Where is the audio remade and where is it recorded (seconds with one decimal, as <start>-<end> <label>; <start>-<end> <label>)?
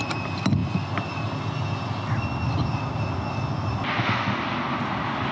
0.0-5.3 recorded